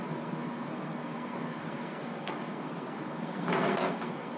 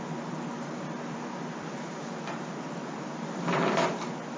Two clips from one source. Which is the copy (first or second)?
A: first